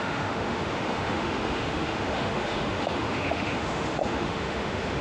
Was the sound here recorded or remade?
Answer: remade